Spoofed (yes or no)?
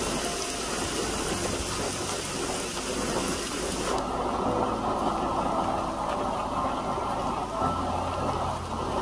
no